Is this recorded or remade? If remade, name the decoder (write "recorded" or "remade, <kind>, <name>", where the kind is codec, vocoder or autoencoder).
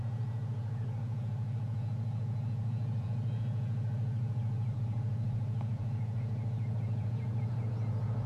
remade, vocoder, Vocos